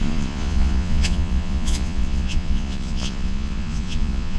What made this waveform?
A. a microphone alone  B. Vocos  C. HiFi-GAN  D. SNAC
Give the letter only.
B